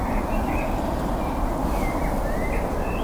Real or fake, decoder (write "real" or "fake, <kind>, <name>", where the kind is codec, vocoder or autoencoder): real